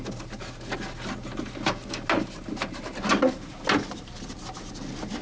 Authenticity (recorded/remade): recorded